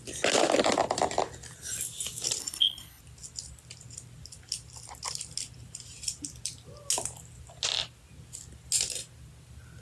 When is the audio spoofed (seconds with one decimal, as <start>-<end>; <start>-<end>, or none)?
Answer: 2.4-3.0